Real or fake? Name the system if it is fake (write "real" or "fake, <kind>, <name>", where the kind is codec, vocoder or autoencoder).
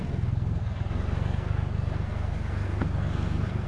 fake, codec, SNAC